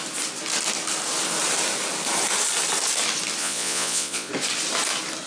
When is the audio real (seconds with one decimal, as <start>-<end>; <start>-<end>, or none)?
0.0-3.4; 4.3-5.3